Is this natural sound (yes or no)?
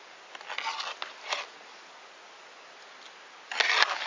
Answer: yes